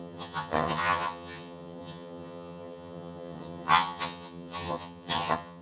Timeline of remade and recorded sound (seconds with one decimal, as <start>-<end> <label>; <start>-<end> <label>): 0.0-5.6 remade